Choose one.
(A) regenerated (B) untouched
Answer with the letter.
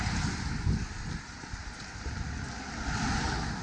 B